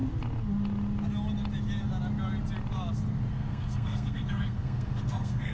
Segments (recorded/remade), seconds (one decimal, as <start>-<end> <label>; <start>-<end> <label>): 0.0-3.3 recorded; 3.3-5.5 remade

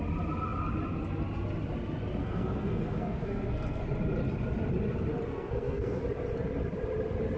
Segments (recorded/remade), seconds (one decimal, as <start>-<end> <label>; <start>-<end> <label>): 0.0-2.2 recorded; 2.2-3.8 remade; 3.8-5.3 recorded; 5.3-6.0 remade; 6.0-7.4 recorded